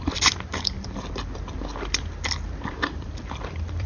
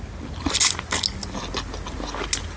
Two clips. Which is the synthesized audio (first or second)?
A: first